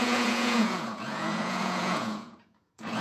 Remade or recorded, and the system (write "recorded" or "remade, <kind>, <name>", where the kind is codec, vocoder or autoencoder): remade, vocoder, Vocos